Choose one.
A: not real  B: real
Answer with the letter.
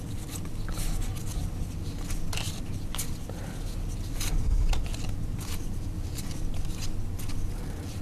B